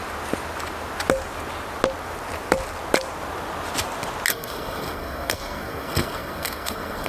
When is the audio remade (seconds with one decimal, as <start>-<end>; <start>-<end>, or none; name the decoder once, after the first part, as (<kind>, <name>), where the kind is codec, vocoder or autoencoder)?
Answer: 4.3-7.1 (codec, SNAC)

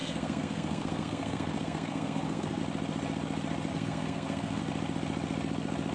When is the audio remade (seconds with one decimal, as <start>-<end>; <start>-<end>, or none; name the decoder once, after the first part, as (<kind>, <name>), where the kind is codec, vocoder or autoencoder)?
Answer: 0.0-2.6 (codec, SNAC); 3.7-4.6

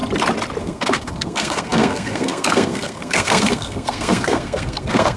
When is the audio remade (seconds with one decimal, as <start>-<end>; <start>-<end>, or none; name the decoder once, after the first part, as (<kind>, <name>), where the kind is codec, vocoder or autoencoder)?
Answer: 0.6-5.2 (codec, SNAC)

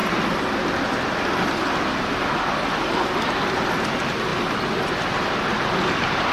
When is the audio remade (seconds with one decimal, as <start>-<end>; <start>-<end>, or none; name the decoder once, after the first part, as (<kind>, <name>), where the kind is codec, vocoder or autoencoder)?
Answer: none

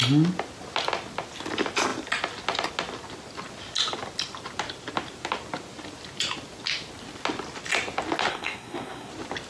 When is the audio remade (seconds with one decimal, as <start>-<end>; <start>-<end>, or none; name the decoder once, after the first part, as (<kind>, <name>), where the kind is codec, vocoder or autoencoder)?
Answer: 8.3-9.1 (codec, SNAC)

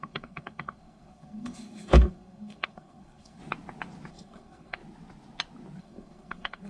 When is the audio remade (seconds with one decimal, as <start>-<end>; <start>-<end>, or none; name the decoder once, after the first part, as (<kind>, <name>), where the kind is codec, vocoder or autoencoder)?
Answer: 0.0-3.4 (codec, SNAC); 4.1-4.8; 5.8-6.7